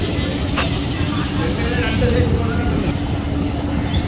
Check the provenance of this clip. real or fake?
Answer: real